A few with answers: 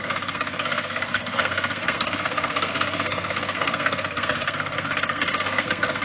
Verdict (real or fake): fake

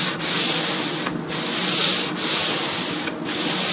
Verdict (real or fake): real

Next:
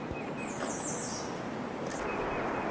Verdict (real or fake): real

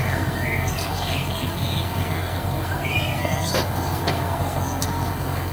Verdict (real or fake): fake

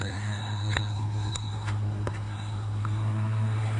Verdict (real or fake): fake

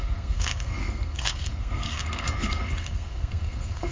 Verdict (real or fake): fake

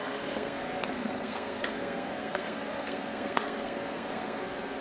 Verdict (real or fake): fake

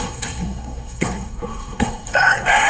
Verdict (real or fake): fake